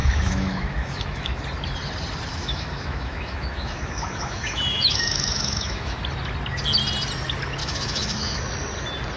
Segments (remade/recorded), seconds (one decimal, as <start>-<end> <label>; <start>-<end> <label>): 0.0-1.4 remade; 1.4-2.3 recorded; 2.3-6.0 remade; 6.0-7.6 recorded; 7.6-8.4 remade; 8.4-9.2 recorded